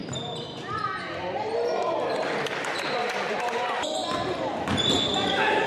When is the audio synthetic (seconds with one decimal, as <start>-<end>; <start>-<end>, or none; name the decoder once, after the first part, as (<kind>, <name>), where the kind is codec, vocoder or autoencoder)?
0.0-4.0 (vocoder, BigVGAN v2)